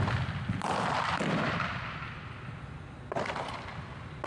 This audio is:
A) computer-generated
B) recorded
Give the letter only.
B